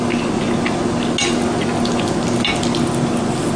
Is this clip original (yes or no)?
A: yes